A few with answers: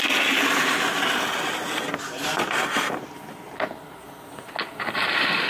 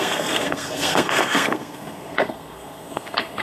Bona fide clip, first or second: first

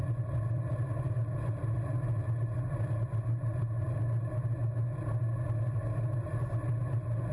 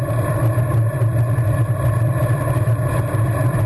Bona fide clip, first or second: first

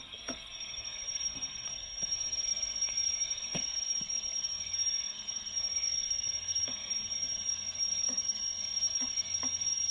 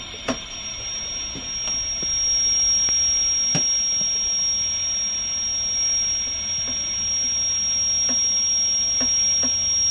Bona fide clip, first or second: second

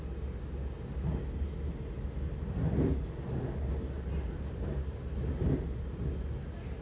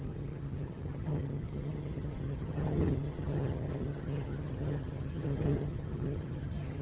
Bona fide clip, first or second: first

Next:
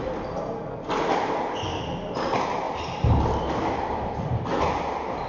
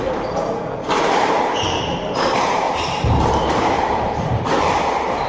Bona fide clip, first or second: first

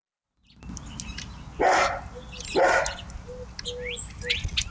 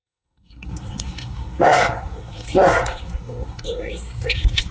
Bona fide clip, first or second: first